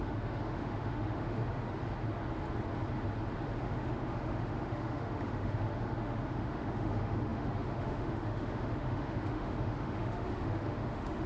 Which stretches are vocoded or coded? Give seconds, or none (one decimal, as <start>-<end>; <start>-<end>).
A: 0.0-1.4; 3.6-11.3